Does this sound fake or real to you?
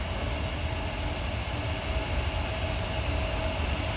real